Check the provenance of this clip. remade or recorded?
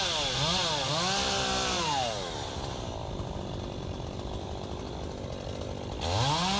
recorded